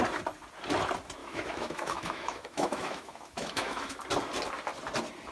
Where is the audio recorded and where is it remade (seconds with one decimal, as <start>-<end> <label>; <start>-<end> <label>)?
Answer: 0.0-1.2 recorded; 1.2-4.0 remade; 4.0-5.3 recorded